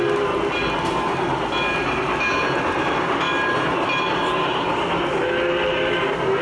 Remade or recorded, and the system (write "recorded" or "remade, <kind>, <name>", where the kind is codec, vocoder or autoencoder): recorded